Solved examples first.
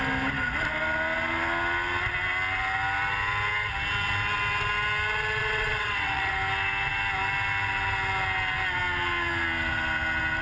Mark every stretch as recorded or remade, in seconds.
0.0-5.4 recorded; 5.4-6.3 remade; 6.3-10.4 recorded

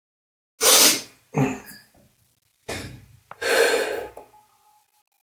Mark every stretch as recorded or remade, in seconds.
0.0-2.5 recorded; 2.5-4.1 remade; 4.1-5.2 recorded

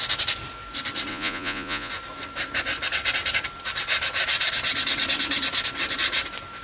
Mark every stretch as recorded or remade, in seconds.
0.0-1.1 recorded; 1.1-1.9 remade; 1.9-6.6 recorded